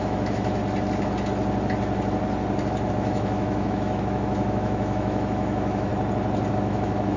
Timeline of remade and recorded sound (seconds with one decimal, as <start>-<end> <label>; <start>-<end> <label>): 0.0-0.6 remade; 0.6-2.9 recorded; 2.9-5.9 remade; 5.9-6.5 recorded; 6.5-7.2 remade